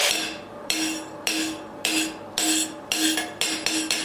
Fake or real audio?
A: real